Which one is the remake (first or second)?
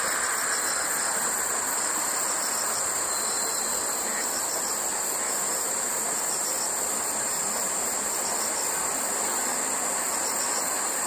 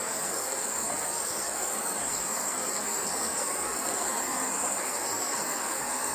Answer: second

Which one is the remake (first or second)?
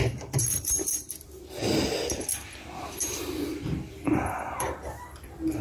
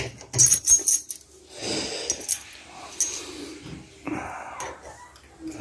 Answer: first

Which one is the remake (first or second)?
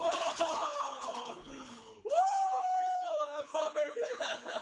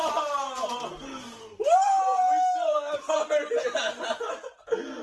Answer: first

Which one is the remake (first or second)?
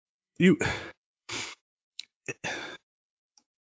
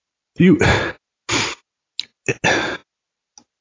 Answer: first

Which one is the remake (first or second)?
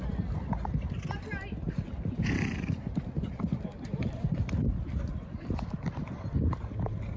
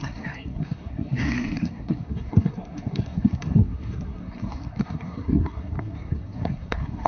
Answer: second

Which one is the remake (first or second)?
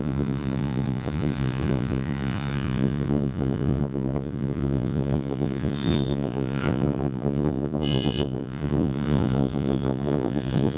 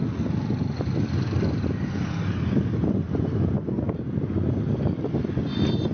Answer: first